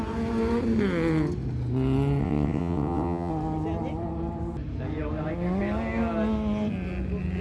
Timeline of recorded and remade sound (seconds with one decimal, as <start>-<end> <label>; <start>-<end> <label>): 0.0-2.2 recorded; 2.2-3.3 remade; 3.3-7.4 recorded